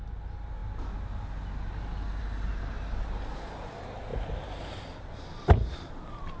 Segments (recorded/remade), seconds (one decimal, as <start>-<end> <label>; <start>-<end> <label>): 0.0-6.4 recorded

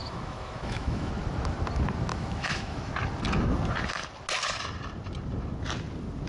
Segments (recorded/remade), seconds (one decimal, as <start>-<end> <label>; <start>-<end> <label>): 0.0-1.1 remade; 1.1-2.1 recorded; 2.1-2.9 remade; 2.9-6.3 recorded

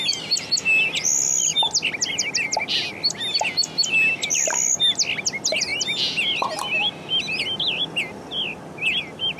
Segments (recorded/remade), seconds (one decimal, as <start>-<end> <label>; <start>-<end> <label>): 0.0-9.4 recorded

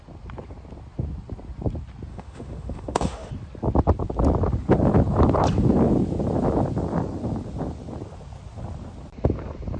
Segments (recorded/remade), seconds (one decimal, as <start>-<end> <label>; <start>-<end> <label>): 0.0-2.1 recorded; 2.1-3.3 remade; 3.3-9.8 recorded

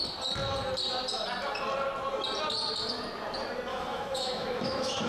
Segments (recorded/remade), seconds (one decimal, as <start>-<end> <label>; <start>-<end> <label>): 0.0-3.7 recorded; 3.7-5.1 remade

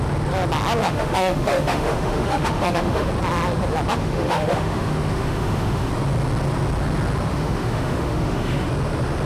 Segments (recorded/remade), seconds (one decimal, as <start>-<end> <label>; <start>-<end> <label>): 0.0-0.8 recorded; 0.8-3.1 remade; 3.1-3.9 recorded; 3.9-5.9 remade; 5.9-7.3 recorded; 7.3-8.7 remade; 8.7-9.3 recorded